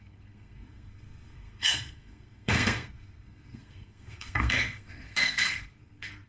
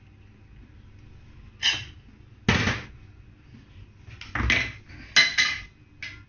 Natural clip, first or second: second